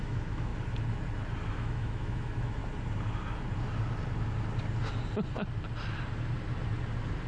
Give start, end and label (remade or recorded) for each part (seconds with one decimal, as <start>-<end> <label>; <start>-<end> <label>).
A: 0.0-0.5 remade; 0.5-1.5 recorded; 1.5-2.6 remade; 2.6-7.3 recorded